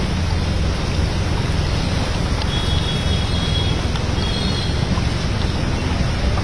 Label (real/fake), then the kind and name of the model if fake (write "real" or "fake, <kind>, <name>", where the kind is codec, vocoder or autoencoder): real